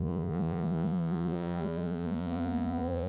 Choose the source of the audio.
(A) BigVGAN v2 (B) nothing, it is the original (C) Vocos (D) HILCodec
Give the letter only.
C